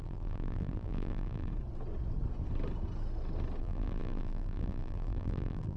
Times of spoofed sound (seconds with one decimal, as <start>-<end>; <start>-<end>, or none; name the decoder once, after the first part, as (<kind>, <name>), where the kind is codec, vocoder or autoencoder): 0.0-1.5 (vocoder, BigVGAN v2); 3.6-5.8